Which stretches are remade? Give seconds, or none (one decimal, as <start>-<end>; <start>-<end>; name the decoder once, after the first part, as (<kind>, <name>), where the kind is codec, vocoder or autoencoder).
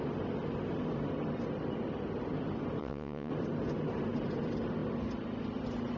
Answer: 2.8-3.3 (vocoder, WaveNeXt)